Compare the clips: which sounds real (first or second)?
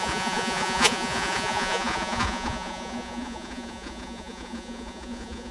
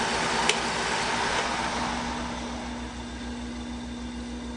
second